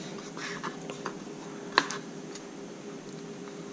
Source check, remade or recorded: recorded